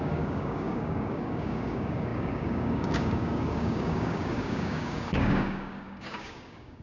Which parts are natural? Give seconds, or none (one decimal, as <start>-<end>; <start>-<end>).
none